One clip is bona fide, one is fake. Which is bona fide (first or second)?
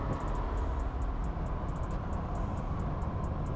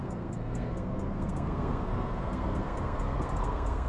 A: first